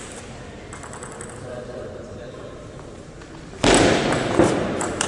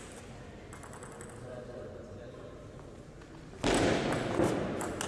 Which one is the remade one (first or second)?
first